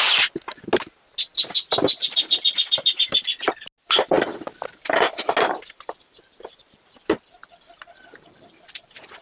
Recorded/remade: recorded